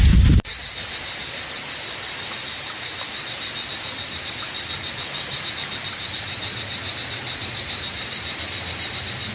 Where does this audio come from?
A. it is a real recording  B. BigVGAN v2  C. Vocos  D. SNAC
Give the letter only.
A